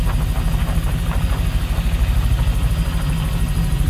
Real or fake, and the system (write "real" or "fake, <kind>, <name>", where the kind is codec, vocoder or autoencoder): real